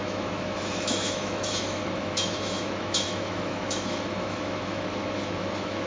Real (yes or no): no